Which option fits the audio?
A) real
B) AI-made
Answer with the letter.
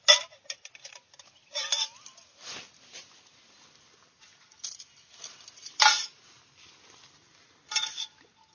A